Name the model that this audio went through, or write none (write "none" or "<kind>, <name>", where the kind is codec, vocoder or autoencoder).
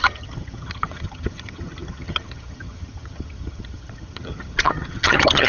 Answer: vocoder, HiFi-GAN